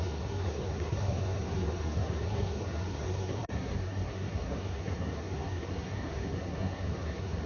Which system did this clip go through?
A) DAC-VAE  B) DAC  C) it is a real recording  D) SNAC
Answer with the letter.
D